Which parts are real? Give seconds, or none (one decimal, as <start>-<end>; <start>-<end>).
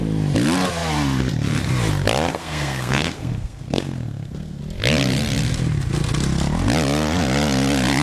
0.0-2.3; 4.6-8.0